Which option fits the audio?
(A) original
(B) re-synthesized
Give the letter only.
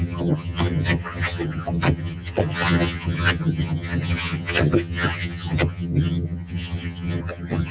B